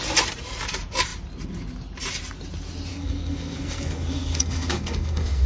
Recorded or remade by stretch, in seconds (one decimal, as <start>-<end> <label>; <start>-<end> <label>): 0.0-2.9 recorded; 2.9-5.5 remade